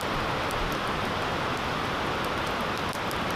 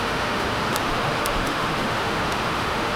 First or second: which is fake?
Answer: second